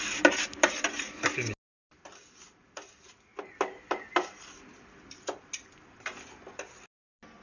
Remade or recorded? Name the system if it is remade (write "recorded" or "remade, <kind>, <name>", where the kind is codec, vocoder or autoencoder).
recorded